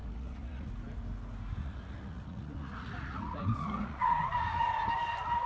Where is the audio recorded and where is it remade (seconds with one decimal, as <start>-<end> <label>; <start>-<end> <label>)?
0.0-0.7 remade; 0.7-1.6 recorded; 1.6-4.9 remade; 4.9-5.5 recorded